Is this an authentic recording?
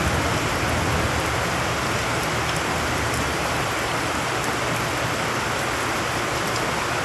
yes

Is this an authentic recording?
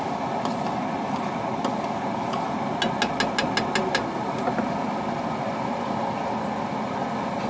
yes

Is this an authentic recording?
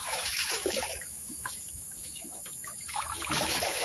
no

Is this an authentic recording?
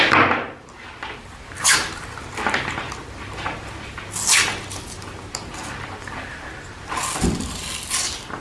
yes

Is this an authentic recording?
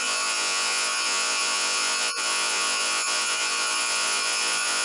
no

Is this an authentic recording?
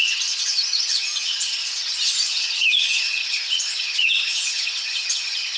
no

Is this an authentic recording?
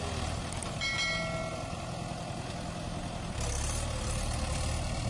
yes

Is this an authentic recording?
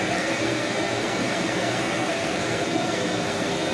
no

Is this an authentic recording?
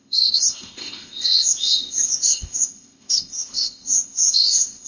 no